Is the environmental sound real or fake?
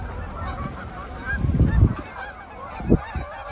real